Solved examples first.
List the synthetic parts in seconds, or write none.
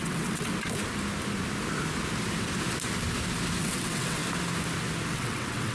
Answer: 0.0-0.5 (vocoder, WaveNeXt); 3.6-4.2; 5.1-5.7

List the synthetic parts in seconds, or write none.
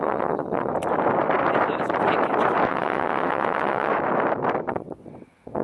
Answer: 0.0-0.7 (vocoder, WaveNeXt); 2.7-3.9; 4.7-5.6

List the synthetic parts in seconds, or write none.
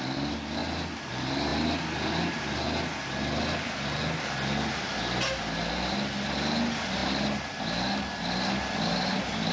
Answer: none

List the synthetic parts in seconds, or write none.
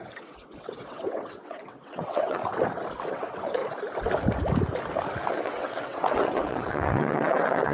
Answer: 0.0-2.4 (vocoder, WaveNeXt); 3.1-3.6; 5.3-7.7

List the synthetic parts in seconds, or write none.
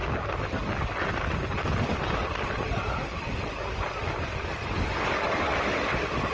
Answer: none